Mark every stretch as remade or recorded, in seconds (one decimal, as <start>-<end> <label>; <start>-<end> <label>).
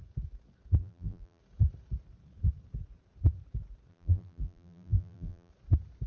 0.0-0.8 recorded; 0.8-1.4 remade; 1.4-3.9 recorded; 3.9-5.5 remade; 5.5-6.1 recorded